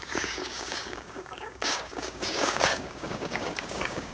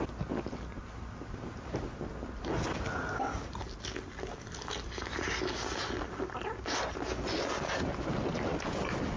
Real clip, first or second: second